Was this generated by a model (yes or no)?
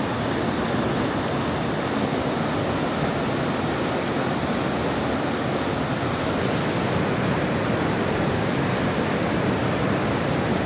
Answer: no